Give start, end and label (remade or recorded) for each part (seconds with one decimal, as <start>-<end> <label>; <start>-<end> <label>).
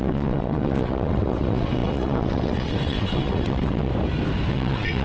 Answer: 0.0-3.9 remade; 3.9-4.5 recorded; 4.5-5.0 remade